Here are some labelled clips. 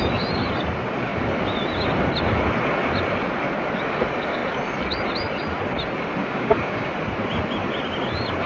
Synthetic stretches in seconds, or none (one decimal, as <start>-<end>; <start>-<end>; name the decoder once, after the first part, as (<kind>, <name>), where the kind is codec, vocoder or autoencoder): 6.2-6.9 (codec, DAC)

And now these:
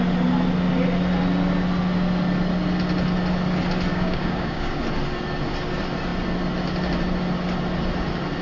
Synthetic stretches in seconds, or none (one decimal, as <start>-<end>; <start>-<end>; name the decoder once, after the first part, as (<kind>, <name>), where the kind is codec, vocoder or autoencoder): 3.9-4.8 (codec, DAC)

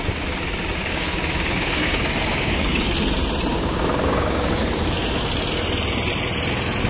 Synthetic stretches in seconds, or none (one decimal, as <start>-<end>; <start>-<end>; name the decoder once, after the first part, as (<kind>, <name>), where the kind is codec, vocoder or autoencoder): 0.8-2.9 (codec, DAC); 3.5-4.6

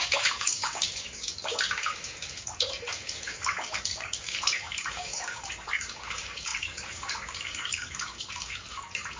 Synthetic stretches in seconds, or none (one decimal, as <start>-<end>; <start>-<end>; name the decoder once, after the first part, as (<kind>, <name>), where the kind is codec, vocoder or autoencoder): 0.0-9.2 (codec, DAC)